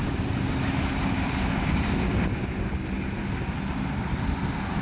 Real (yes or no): yes